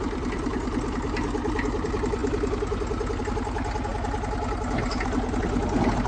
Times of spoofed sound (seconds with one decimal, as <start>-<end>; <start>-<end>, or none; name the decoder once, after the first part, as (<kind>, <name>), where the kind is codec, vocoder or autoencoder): none